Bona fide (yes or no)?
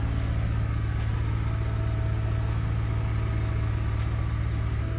yes